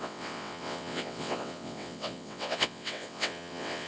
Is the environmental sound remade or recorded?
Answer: remade